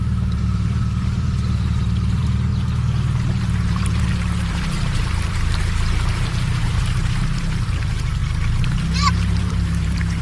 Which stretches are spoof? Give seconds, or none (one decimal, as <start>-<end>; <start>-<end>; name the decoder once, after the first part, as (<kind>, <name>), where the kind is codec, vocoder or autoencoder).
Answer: 0.0-2.5 (vocoder, BigVGAN v2); 3.4-8.2; 9.1-10.2